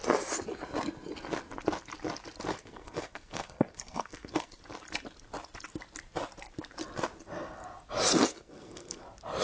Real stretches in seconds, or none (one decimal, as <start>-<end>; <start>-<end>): 0.0-2.5; 4.6-8.3; 9.0-9.4